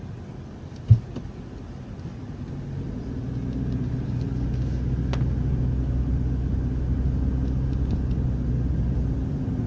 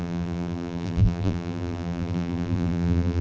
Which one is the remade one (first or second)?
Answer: second